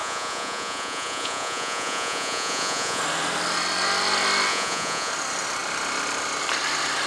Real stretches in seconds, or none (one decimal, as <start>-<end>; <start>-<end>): 3.0-4.5; 5.1-7.1